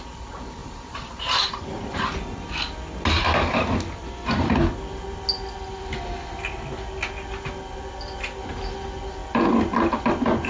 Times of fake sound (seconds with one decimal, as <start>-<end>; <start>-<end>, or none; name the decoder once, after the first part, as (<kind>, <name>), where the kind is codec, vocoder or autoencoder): 0.6-1.5 (vocoder, BigVGAN v2)